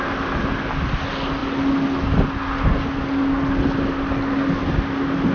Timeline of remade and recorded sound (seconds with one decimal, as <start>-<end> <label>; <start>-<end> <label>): 0.0-5.3 recorded